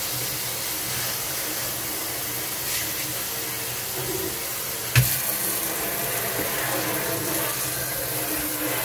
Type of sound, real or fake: real